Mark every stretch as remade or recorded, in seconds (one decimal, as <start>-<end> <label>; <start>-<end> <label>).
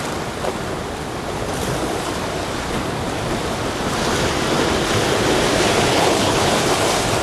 0.0-5.9 recorded; 5.9-6.5 remade; 6.5-7.2 recorded